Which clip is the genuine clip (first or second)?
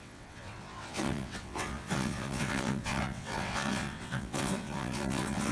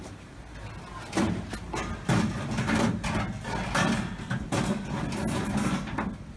second